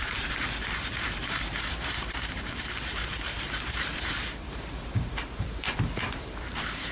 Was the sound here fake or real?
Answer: fake